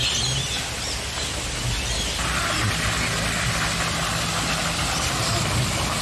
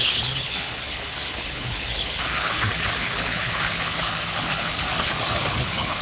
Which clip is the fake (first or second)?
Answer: second